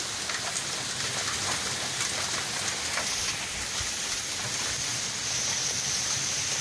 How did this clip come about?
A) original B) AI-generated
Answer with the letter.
A